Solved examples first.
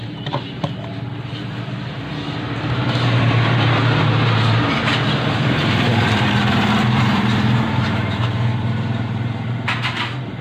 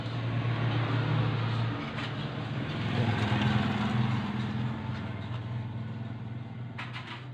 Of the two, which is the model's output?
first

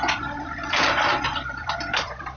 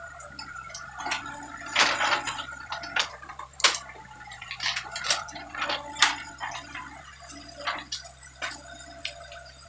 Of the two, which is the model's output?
first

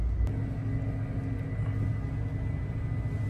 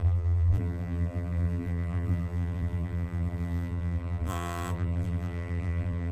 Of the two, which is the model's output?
second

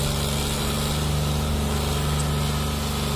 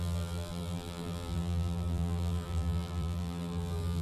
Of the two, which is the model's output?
second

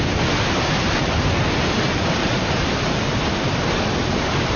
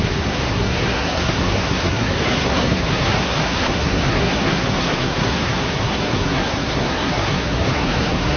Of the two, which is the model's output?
second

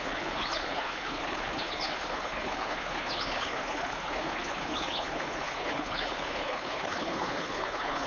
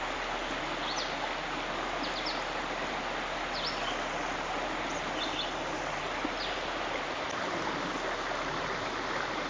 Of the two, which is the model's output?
first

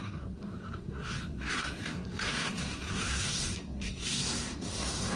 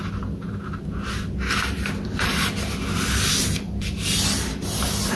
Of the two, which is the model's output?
first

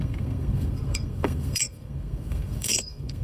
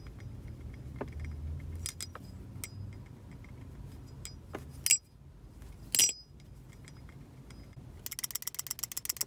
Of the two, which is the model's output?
first